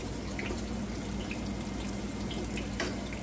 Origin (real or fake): real